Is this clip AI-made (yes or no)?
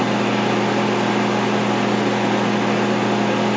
no